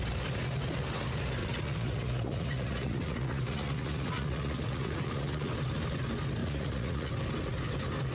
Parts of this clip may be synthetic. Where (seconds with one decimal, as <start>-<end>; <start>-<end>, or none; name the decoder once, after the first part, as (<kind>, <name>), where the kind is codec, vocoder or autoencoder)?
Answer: 1.4-5.5 (vocoder, Vocos); 6.4-7.1